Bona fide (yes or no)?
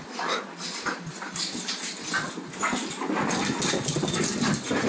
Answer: yes